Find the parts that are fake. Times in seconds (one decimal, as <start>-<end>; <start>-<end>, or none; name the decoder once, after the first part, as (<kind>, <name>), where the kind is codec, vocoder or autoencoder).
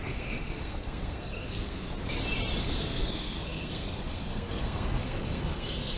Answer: 0.0-1.9 (codec, SNAC); 2.6-6.0